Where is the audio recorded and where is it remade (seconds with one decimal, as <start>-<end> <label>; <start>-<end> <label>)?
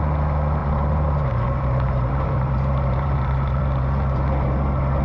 0.0-0.6 recorded; 0.6-3.6 remade; 3.6-5.0 recorded